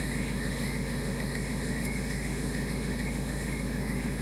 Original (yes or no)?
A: no